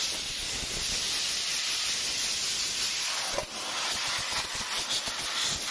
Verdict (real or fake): real